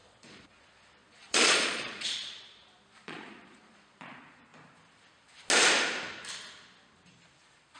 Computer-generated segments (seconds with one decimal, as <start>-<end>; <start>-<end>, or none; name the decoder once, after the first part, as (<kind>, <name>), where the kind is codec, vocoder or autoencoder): 0.0-4.5 (vocoder, Vocos)